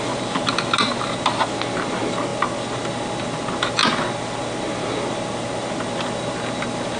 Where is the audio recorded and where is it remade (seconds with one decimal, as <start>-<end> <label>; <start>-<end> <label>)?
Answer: 0.0-7.0 recorded